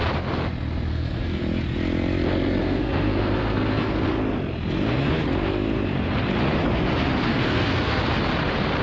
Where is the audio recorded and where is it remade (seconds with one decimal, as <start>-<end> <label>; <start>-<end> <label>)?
0.0-0.9 recorded; 0.9-1.4 remade; 1.4-2.6 recorded; 2.6-4.1 remade; 4.1-7.3 recorded; 7.3-8.0 remade; 8.0-8.8 recorded